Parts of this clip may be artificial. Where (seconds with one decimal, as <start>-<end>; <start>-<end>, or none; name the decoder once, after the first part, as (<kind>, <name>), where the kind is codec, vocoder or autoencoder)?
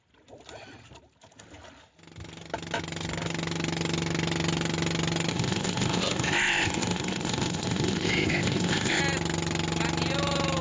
5.3-9.0 (codec, ZipCodec)